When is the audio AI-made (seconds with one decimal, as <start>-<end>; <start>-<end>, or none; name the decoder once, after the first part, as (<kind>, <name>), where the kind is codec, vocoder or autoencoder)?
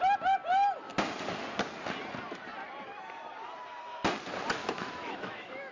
4.6-5.7 (autoencoder, DAC-VAE)